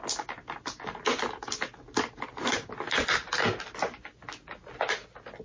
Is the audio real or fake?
real